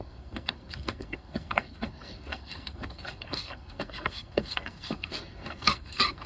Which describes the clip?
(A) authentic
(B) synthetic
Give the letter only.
B